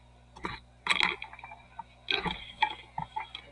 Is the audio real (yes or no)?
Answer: yes